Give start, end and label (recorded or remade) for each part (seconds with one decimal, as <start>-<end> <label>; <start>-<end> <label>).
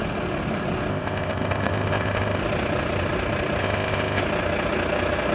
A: 0.0-0.9 recorded; 0.9-2.4 remade; 2.4-3.6 recorded; 3.6-4.2 remade; 4.2-5.3 recorded